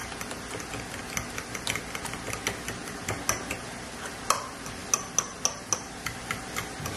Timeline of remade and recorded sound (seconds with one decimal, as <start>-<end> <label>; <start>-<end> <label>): 0.0-7.0 recorded